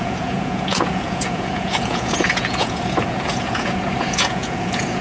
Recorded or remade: remade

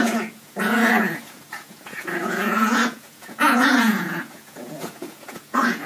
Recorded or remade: remade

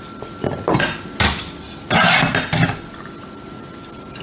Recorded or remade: recorded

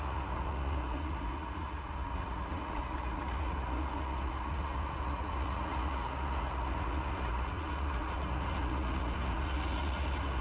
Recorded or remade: remade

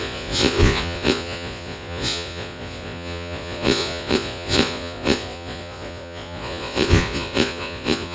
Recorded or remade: remade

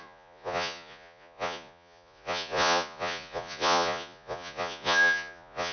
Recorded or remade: remade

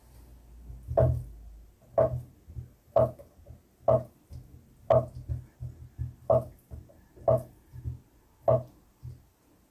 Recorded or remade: recorded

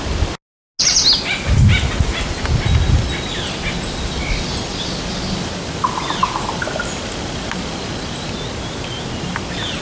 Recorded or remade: recorded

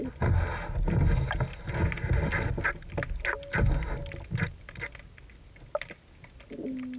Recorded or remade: recorded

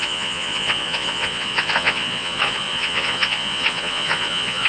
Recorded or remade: remade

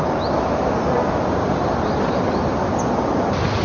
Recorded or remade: recorded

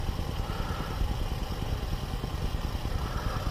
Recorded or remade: recorded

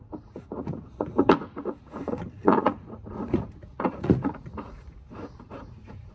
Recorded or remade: remade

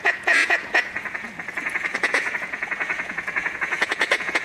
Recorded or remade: remade